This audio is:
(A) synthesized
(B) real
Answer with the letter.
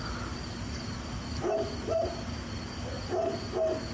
B